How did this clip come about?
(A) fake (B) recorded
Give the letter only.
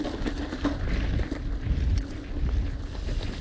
B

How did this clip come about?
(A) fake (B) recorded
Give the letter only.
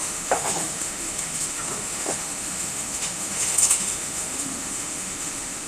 A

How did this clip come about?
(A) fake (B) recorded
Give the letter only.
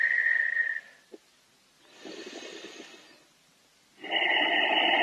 B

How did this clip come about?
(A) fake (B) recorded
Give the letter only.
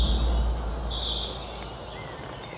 B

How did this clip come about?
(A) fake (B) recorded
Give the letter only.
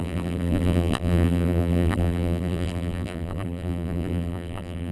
A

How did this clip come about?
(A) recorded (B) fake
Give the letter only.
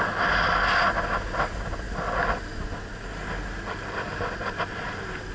A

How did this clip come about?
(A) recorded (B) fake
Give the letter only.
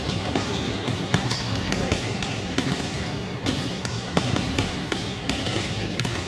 B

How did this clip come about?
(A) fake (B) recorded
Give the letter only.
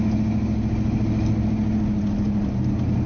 B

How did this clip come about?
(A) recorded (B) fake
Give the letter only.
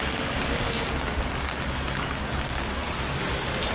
A